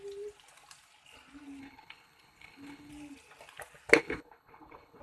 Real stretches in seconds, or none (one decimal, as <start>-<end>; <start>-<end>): 0.0-1.6; 2.9-4.0